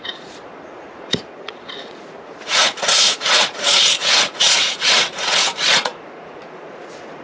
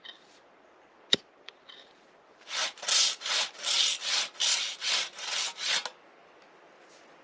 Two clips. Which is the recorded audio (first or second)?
second